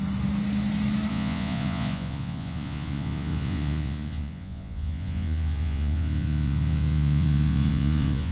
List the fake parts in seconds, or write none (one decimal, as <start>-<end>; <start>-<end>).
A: 1.1-8.3